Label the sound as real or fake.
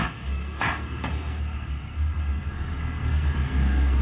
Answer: fake